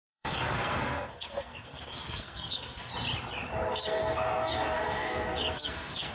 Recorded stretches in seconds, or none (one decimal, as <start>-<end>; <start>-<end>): 2.9-3.7